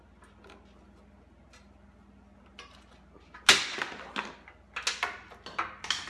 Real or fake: real